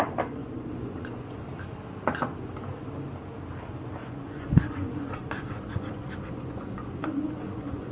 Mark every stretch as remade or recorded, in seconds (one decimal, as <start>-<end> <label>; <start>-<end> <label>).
0.0-0.4 recorded; 0.4-1.4 remade; 1.4-4.0 recorded; 4.0-7.9 remade